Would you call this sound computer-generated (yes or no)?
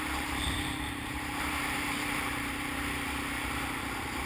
yes